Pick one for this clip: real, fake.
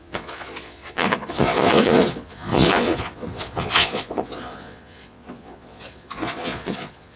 fake